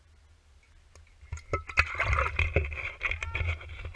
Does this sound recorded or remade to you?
recorded